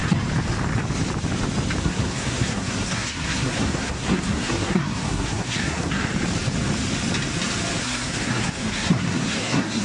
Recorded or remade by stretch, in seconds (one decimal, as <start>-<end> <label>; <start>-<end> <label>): 0.0-1.8 recorded; 1.8-6.1 remade; 6.1-7.8 recorded; 7.8-9.8 remade